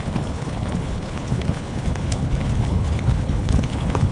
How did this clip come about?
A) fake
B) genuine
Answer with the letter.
A